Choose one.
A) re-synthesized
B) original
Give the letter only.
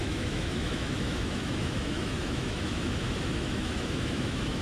A